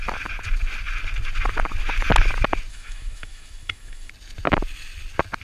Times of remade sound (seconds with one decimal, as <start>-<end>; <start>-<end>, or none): 2.7-4.1